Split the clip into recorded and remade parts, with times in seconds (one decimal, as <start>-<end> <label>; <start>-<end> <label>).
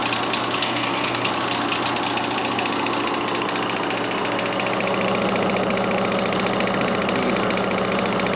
0.0-0.6 recorded; 0.6-1.3 remade; 1.3-8.4 recorded